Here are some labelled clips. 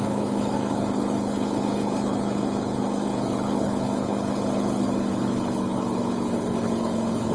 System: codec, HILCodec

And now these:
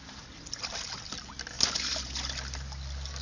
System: none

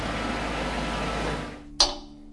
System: none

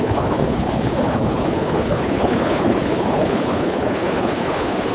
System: codec, HILCodec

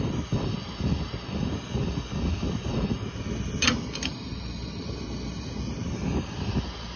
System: none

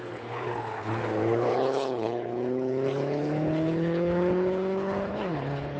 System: codec, HILCodec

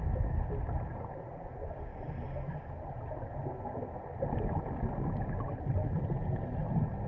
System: none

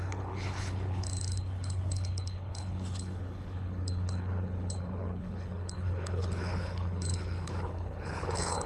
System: codec, HILCodec